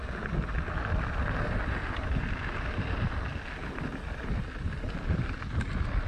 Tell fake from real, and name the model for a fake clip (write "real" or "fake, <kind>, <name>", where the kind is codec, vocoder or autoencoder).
real